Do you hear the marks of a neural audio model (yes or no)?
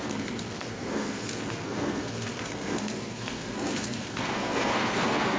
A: yes